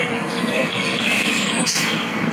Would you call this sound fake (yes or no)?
yes